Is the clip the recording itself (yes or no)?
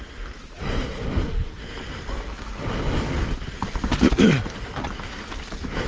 yes